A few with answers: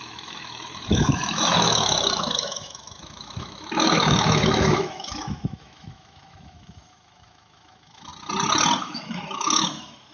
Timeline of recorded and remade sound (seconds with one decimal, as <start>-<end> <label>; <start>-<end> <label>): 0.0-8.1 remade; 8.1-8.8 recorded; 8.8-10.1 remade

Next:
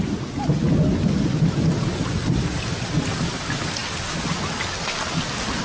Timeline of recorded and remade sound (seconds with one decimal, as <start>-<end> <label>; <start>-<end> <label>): 0.0-5.6 recorded

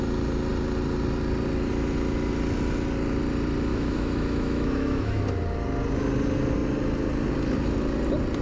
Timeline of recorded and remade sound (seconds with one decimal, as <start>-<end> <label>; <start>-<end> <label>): 0.0-3.7 recorded; 3.7-5.2 remade; 5.2-8.4 recorded

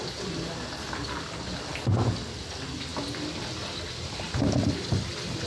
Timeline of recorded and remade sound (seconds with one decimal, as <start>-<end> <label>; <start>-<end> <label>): 0.0-5.5 recorded

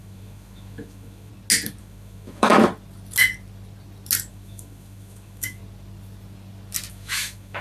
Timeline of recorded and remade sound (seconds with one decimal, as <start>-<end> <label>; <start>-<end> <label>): 0.0-1.3 remade; 1.3-1.8 recorded; 1.8-2.5 remade; 2.5-4.3 recorded; 4.3-5.6 remade; 5.6-6.9 recorded; 6.9-7.6 remade

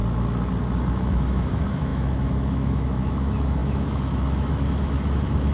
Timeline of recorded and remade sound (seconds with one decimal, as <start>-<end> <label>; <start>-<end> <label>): 0.0-0.9 recorded; 0.9-5.5 remade

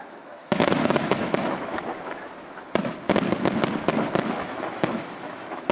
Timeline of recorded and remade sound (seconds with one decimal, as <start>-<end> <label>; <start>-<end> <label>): 0.0-2.8 remade; 2.8-4.2 recorded; 4.2-5.7 remade

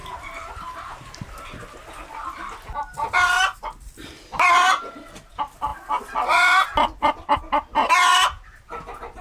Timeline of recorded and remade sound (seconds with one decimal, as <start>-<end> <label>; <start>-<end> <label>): 0.0-9.2 recorded